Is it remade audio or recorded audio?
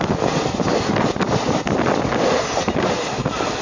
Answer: recorded